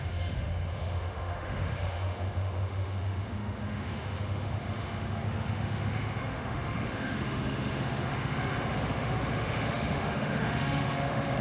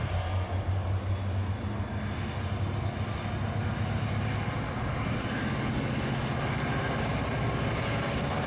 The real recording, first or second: second